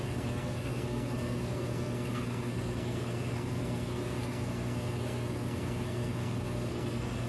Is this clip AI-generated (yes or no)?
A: yes